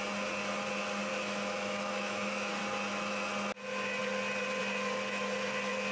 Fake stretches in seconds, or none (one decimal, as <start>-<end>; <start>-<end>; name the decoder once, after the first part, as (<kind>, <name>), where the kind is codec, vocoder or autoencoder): 1.1-2.6 (autoencoder, DAC-VAE)